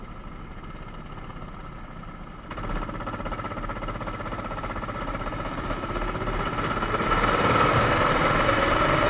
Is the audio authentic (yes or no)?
yes